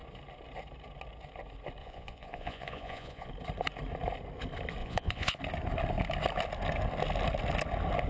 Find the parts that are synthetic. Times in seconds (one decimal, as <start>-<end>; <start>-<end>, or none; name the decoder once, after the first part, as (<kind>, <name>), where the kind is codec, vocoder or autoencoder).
1.8-3.3 (vocoder, Vocos); 4.8-5.4